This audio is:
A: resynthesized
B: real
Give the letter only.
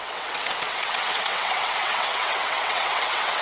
A